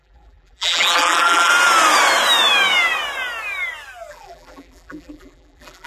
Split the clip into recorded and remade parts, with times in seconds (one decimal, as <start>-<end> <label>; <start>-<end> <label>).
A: 0.0-1.5 remade; 1.5-4.1 recorded; 4.1-5.9 remade